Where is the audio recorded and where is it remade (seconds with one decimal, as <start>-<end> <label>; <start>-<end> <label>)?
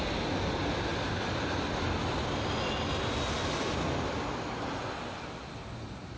0.0-6.2 recorded